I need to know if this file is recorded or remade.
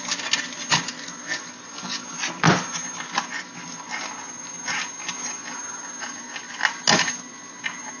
recorded